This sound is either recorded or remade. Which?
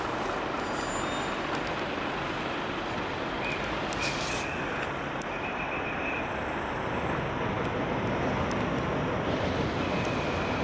recorded